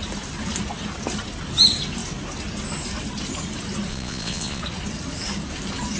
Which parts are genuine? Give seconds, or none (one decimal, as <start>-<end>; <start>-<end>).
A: 0.0-3.9; 4.6-6.0